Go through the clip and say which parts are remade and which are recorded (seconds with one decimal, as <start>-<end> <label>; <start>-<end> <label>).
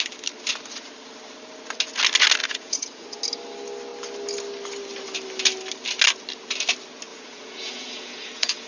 0.0-2.4 recorded; 2.4-3.2 remade; 3.2-7.1 recorded; 7.1-8.7 remade